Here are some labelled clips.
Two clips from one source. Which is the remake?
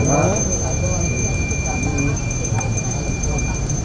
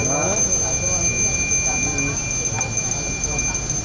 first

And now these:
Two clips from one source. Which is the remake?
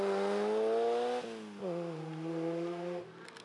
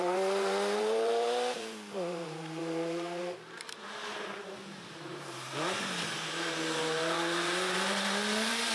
second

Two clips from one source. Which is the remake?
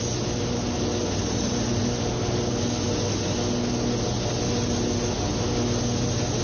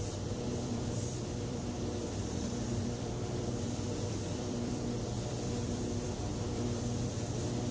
second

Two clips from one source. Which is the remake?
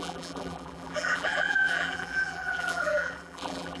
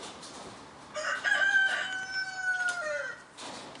first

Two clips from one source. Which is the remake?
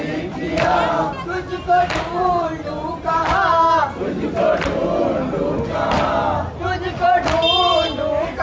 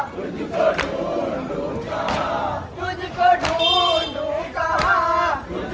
second